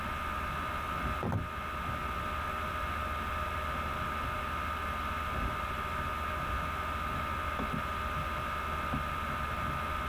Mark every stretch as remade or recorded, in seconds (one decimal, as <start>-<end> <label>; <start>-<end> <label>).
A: 0.0-10.1 recorded